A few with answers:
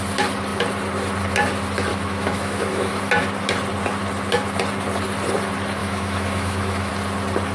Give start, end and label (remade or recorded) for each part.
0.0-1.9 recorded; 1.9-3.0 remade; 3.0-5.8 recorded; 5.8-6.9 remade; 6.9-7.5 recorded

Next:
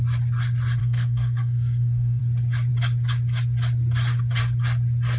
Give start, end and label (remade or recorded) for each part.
0.0-0.8 recorded; 0.8-2.2 remade; 2.2-5.2 recorded

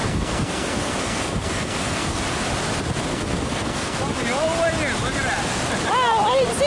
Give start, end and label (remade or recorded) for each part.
0.0-2.2 remade; 2.2-3.1 recorded; 3.1-4.0 remade; 4.0-6.7 recorded

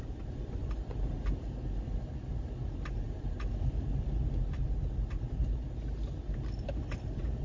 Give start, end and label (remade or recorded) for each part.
0.0-7.4 recorded

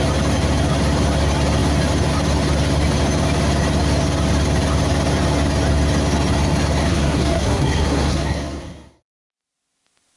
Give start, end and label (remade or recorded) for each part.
0.0-6.8 recorded; 6.8-9.2 remade; 9.2-10.2 recorded

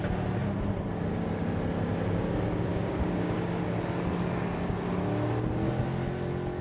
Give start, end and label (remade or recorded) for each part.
0.0-2.7 recorded; 2.7-3.6 remade; 3.6-6.6 recorded

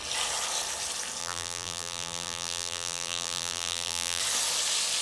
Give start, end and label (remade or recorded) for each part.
0.0-1.2 recorded; 1.2-4.2 remade; 4.2-5.0 recorded